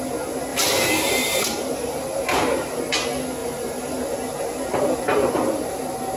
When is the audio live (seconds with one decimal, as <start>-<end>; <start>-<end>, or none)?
0.0-0.5; 2.8-3.4; 5.8-6.2